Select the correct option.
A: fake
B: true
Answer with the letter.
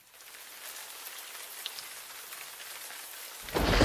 B